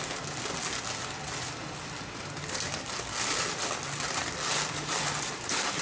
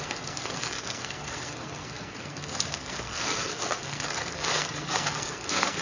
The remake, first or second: second